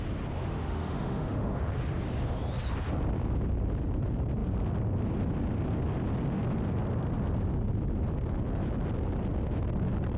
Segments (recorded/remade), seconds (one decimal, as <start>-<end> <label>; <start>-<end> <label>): 0.0-0.4 recorded; 0.4-1.6 remade; 1.6-10.2 recorded